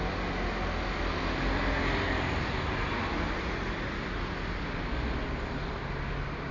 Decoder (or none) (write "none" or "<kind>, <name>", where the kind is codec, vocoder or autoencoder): none